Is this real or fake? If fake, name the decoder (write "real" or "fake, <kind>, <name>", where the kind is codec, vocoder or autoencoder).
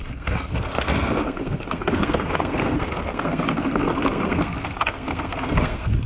fake, codec, SNAC